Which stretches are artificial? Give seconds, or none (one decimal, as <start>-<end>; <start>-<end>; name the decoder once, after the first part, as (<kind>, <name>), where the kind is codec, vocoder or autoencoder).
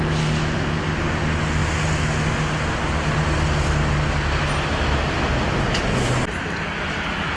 none